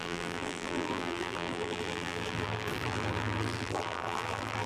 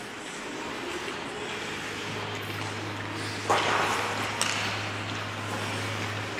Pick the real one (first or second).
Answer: second